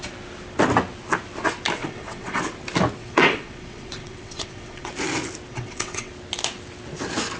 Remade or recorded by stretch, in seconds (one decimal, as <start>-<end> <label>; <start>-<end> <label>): 0.0-1.8 recorded; 1.8-2.4 remade; 2.4-3.0 recorded; 3.0-4.9 remade; 4.9-5.5 recorded; 5.5-6.1 remade; 6.1-7.4 recorded